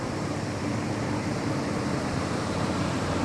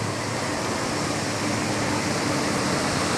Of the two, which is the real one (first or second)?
second